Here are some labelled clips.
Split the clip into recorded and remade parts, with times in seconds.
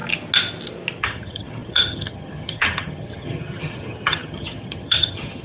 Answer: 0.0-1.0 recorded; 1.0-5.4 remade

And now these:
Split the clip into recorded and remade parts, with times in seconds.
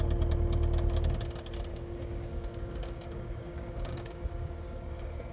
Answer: 0.0-1.7 recorded; 1.7-5.3 remade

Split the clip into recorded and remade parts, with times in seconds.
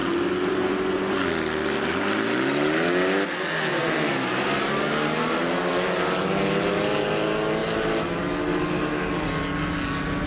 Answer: 0.0-3.7 recorded; 3.7-4.7 remade; 4.7-7.6 recorded; 7.6-8.2 remade; 8.2-10.3 recorded